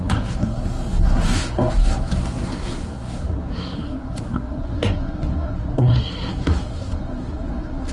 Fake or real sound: fake